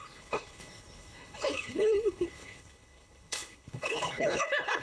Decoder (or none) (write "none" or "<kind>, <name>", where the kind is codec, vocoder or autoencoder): codec, HILCodec